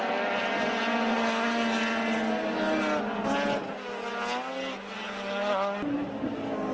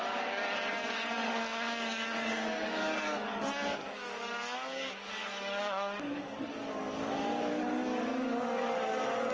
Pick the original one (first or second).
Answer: first